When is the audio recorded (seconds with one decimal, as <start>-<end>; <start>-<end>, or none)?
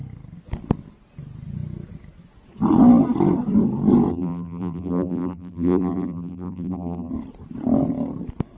0.0-4.1; 7.1-8.6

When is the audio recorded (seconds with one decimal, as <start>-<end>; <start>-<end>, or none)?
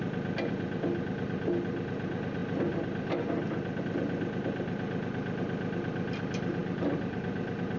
0.0-7.8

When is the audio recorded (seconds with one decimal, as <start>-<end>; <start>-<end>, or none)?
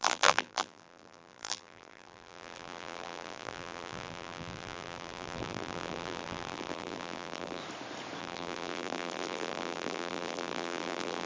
7.6-8.2